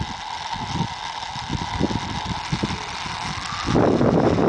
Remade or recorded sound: recorded